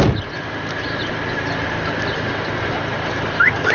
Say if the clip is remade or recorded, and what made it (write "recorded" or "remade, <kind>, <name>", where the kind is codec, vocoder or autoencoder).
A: recorded